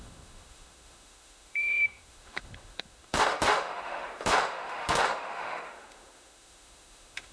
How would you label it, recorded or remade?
remade